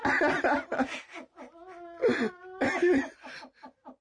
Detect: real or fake real